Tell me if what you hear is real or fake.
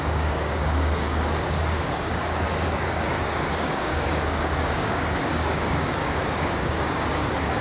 fake